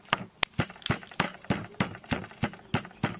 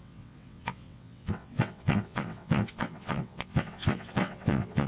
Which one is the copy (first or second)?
second